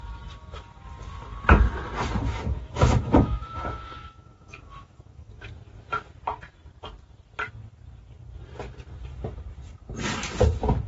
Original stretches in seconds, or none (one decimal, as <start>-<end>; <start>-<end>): 0.0-2.3; 5.5-10.9